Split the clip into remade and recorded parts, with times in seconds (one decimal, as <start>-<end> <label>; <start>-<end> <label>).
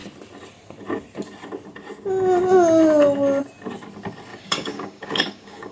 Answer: 0.0-4.3 recorded; 4.3-5.7 remade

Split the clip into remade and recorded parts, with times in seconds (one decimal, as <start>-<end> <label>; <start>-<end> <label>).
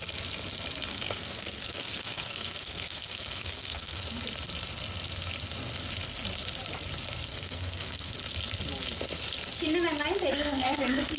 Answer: 0.0-0.9 recorded; 0.9-4.0 remade; 4.0-7.3 recorded; 7.3-8.1 remade; 8.1-10.3 recorded; 10.3-11.2 remade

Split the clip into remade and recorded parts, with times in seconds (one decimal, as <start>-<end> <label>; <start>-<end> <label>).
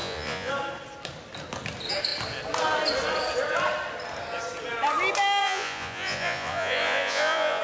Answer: 0.0-0.5 remade; 0.5-5.4 recorded; 5.4-7.6 remade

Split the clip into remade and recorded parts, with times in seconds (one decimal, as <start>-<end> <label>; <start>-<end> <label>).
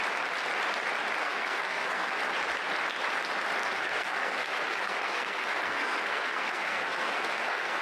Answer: 0.0-1.2 recorded; 1.2-2.2 remade; 2.2-3.6 recorded; 3.6-7.8 remade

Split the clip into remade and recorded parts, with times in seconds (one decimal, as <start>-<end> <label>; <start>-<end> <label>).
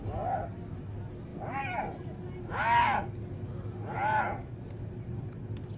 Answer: 0.0-5.8 recorded